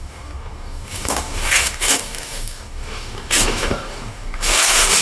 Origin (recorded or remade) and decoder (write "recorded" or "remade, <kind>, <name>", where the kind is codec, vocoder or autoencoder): remade, codec, DAC